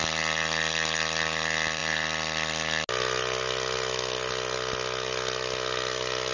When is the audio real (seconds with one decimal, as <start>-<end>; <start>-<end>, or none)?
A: 0.0-6.3